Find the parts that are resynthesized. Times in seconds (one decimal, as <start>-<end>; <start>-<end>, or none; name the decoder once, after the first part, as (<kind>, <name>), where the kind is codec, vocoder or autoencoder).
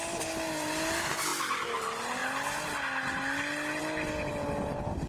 none